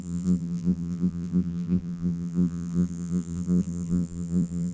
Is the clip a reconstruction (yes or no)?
yes